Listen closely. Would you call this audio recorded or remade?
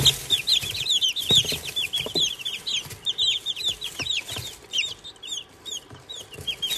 recorded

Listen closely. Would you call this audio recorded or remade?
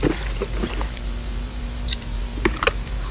remade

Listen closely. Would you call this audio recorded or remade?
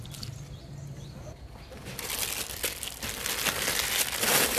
recorded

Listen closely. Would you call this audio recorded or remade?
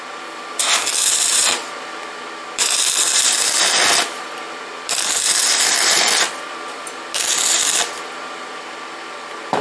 remade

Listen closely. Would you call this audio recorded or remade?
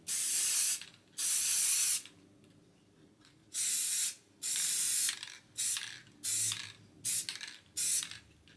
recorded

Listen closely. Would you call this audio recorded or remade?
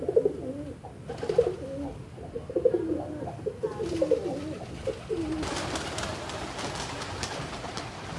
recorded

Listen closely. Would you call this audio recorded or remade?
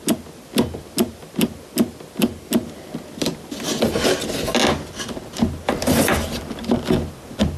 recorded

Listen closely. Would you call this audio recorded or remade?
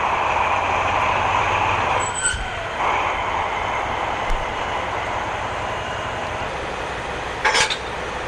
remade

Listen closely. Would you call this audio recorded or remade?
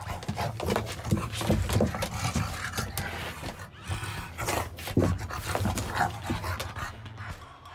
recorded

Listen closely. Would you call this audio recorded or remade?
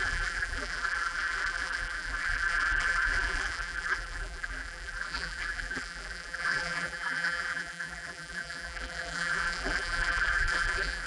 remade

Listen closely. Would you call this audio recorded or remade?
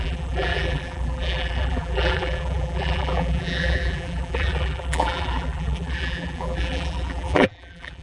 remade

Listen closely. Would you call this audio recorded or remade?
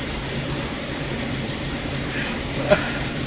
remade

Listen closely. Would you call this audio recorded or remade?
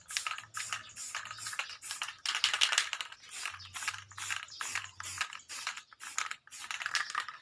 recorded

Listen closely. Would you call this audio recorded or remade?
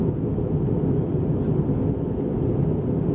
recorded